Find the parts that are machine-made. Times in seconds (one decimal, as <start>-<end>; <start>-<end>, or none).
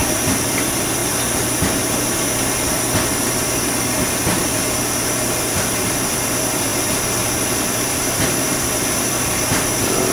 0.0-1.0; 5.5-10.1